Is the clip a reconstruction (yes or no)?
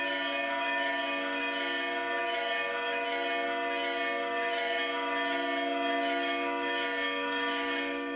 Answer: no